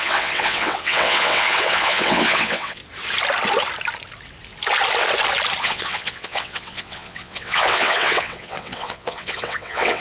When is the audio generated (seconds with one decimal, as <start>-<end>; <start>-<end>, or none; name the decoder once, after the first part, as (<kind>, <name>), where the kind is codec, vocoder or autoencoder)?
0.0-2.8 (vocoder, WaveNeXt); 5.6-10.0